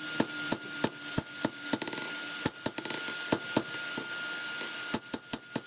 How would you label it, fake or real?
real